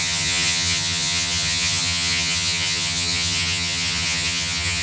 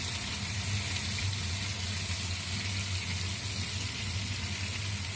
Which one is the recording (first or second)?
second